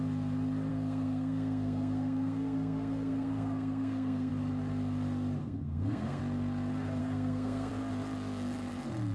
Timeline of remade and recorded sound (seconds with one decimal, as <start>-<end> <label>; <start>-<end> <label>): 0.0-0.7 recorded; 0.7-4.3 remade; 4.3-5.4 recorded; 5.4-6.2 remade; 6.2-7.0 recorded; 7.0-7.7 remade; 7.7-9.1 recorded